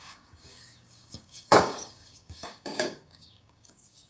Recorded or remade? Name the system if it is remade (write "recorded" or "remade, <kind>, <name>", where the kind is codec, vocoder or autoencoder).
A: remade, codec, DAC